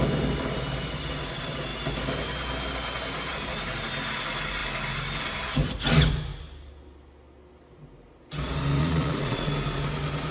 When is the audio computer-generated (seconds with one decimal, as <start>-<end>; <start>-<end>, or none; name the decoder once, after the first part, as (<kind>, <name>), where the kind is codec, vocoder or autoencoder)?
8.8-9.5 (vocoder, Vocos)